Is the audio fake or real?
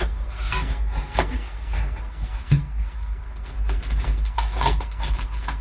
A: fake